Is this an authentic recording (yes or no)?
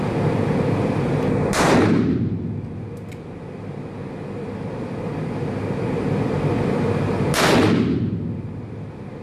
yes